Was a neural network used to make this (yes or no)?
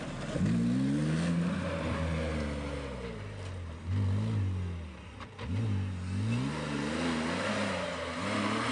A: no